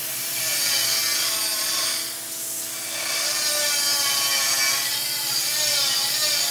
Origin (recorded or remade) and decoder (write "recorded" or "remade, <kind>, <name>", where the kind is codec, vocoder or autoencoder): recorded